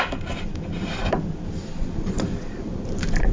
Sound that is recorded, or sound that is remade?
remade